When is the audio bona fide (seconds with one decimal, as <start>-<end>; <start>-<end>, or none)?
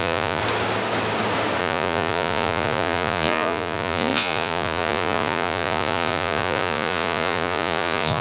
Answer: 0.4-1.6